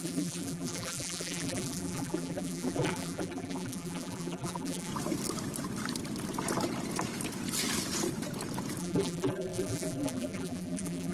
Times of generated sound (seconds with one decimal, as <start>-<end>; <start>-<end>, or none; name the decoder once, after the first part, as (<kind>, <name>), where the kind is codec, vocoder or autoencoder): 0.0-4.9 (vocoder, BigVGAN v2); 8.8-11.1